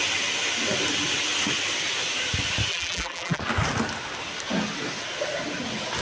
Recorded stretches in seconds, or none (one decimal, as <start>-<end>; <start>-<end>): 0.0-2.7; 3.4-6.0